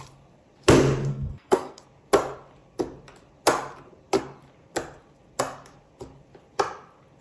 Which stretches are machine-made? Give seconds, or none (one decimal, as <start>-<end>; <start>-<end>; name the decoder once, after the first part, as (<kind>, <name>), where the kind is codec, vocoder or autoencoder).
1.1-1.8 (codec, SNAC)